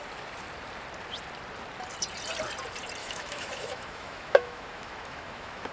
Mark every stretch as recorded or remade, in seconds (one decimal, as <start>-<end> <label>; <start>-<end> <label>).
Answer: 0.0-3.0 recorded; 3.0-5.7 remade